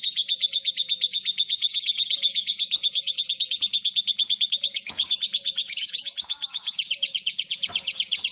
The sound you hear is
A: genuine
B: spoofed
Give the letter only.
B